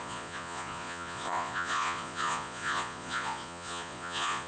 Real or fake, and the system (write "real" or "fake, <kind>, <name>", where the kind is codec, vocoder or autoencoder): fake, vocoder, Vocos